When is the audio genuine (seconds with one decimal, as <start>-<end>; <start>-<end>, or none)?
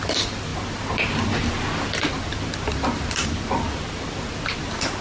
none